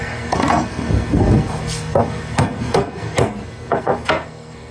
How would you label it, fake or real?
fake